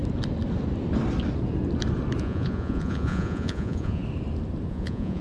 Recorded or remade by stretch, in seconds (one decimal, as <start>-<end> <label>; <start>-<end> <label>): 0.0-2.2 recorded; 2.2-4.0 remade; 4.0-4.7 recorded; 4.7-5.2 remade

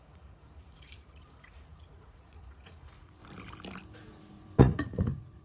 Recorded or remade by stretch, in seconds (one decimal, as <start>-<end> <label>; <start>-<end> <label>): 0.0-3.2 remade; 3.2-4.6 recorded; 4.6-5.4 remade

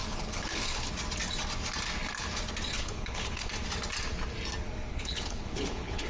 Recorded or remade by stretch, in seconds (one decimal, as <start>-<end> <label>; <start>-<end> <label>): 0.0-0.9 remade; 0.9-2.7 recorded; 2.7-3.5 remade; 3.5-4.9 recorded; 4.9-6.1 remade

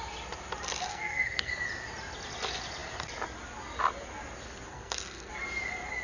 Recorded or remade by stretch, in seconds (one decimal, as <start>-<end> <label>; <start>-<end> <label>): 0.0-0.9 recorded; 0.9-1.5 remade; 1.5-4.7 recorded; 4.7-5.3 remade; 5.3-6.0 recorded

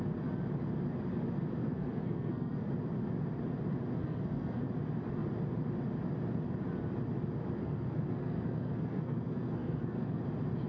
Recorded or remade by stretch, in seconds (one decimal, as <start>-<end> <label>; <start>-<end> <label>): 0.0-1.6 recorded; 1.6-2.7 remade; 2.7-4.0 recorded; 4.0-4.6 remade; 4.6-7.6 recorded; 7.6-10.2 remade; 10.2-10.7 recorded

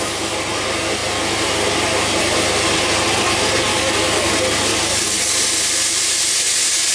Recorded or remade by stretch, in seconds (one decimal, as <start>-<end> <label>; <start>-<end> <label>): 0.0-3.7 recorded; 3.7-4.3 remade; 4.3-4.7 recorded; 4.7-5.3 remade; 5.3-6.9 recorded